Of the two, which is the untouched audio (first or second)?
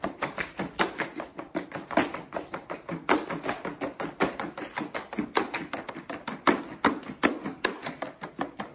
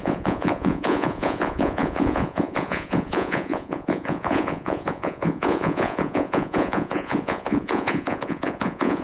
first